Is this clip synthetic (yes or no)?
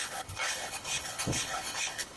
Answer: yes